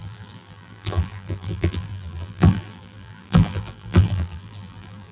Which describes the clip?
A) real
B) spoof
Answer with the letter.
B